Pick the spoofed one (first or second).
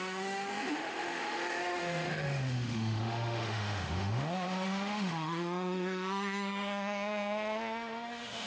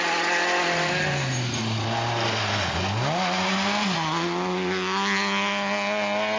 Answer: first